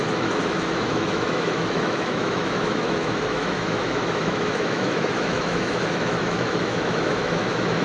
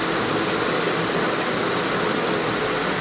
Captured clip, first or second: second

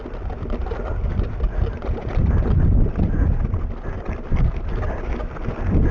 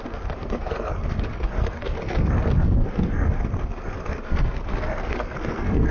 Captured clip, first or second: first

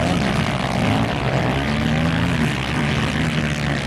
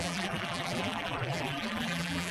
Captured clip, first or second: first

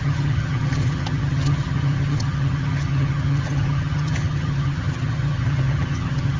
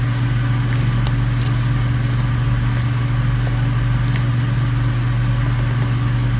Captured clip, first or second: second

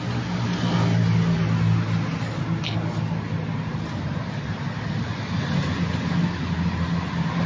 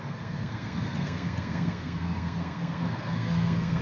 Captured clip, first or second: first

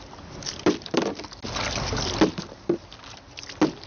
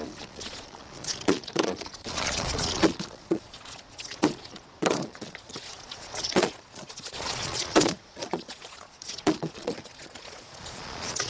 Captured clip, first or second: first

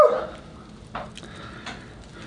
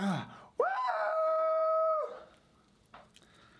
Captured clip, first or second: first